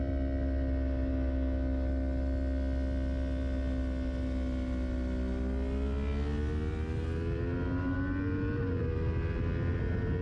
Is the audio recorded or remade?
recorded